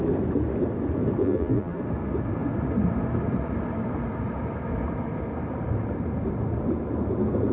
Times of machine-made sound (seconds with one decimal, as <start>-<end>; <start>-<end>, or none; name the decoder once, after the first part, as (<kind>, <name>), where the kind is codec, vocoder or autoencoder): 1.2-1.8 (vocoder, BigVGAN v2)

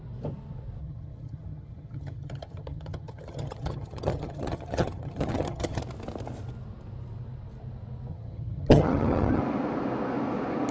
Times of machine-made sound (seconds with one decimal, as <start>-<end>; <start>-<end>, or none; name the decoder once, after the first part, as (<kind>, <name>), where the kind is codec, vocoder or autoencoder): 0.8-5.8 (vocoder, HiFi-GAN); 8.1-9.4